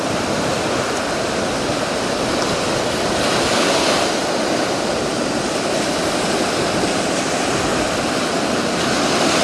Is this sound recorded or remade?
recorded